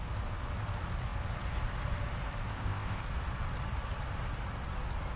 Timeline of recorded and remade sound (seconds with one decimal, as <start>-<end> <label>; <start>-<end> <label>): 0.0-2.5 recorded; 2.5-3.0 remade; 3.0-5.2 recorded